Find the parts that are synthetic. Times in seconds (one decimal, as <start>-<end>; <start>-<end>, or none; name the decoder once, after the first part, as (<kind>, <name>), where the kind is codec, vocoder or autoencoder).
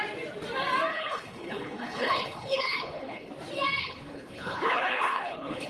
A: 0.9-3.3 (codec, HILCodec); 3.8-5.7